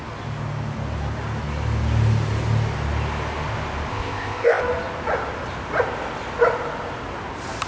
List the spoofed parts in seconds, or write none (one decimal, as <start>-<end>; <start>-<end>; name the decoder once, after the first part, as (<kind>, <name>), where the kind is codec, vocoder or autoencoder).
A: 3.9-4.6 (codec, ZipCodec)